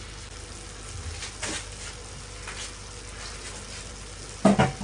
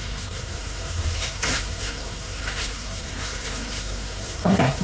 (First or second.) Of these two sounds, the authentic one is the first